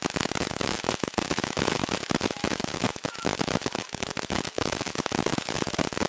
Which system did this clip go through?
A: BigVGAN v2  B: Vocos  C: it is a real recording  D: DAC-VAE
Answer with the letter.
D